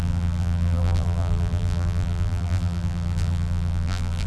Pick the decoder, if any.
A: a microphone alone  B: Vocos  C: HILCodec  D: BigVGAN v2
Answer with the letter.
D